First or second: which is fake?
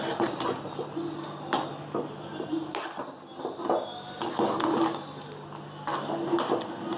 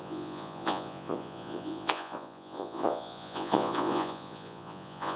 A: second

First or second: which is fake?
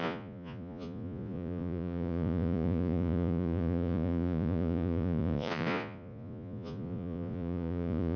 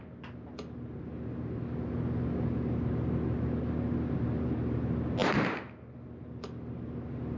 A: first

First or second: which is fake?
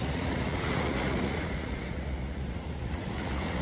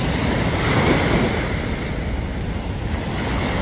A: first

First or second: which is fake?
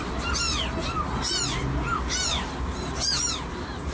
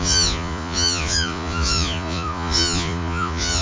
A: second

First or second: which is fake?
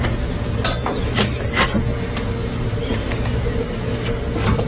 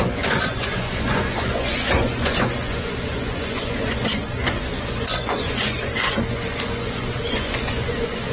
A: second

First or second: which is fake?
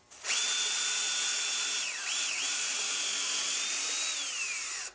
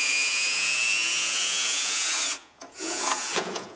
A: second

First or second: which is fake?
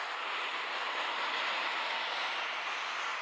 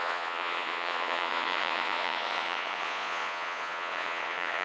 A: second